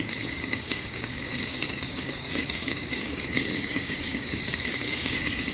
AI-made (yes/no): yes